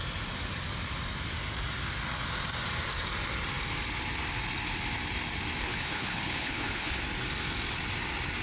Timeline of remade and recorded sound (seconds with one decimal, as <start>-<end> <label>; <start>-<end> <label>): 0.0-5.6 recorded; 5.6-7.0 remade; 7.0-8.4 recorded